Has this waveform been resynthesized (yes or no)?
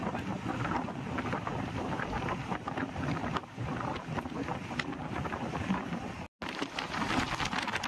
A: no